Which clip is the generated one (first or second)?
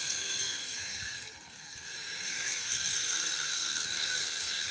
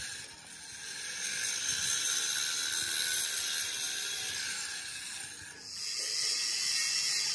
first